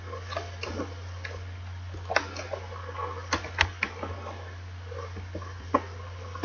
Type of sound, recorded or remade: recorded